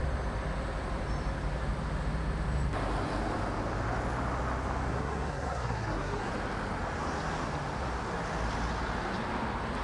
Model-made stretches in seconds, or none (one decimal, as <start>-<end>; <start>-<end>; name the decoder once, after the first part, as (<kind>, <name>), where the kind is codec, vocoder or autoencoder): 4.9-6.3 (codec, SNAC)